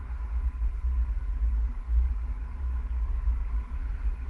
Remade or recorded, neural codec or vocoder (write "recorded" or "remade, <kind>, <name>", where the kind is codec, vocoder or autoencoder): remade, codec, DAC